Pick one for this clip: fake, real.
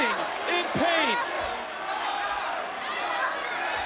real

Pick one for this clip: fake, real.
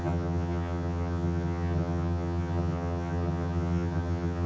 fake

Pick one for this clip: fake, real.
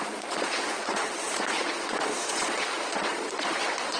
fake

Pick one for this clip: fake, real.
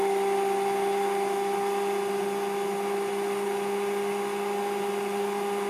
real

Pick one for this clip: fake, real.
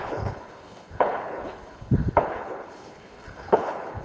fake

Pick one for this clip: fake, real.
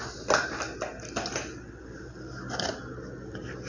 real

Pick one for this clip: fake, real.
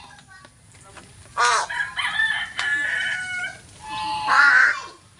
real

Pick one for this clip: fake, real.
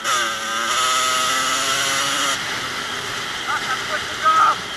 real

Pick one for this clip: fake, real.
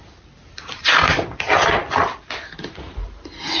fake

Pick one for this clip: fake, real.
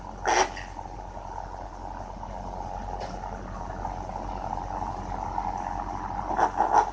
real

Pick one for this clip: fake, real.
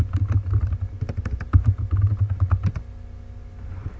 real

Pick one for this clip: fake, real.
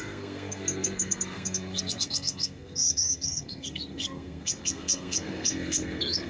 fake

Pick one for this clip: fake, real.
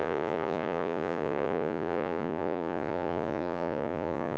fake